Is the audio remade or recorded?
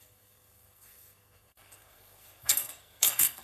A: remade